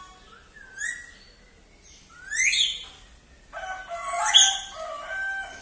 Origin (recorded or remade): recorded